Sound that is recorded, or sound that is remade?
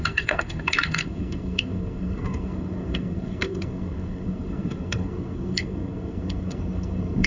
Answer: remade